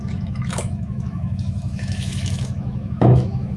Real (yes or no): no